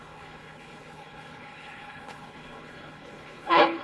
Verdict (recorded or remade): remade